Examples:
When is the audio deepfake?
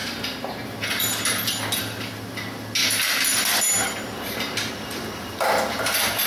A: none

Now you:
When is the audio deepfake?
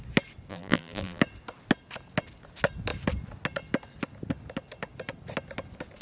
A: 0.5-1.2 (vocoder, BigVGAN v2)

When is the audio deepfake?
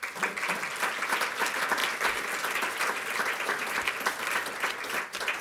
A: none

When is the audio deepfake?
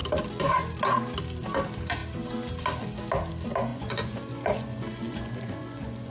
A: 3.7-6.1 (vocoder, Vocos)